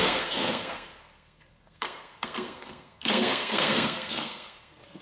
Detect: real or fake fake